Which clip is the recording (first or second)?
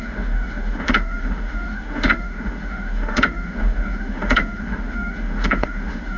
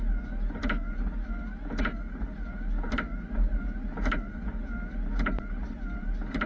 second